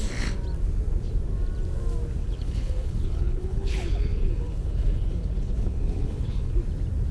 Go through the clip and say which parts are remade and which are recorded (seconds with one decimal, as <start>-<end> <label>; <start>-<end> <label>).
0.0-2.2 recorded; 2.2-6.5 remade; 6.5-7.1 recorded